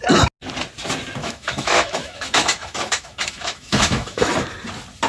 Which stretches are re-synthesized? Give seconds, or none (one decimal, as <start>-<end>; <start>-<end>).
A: 1.2-4.3